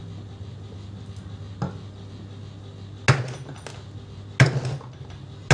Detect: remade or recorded recorded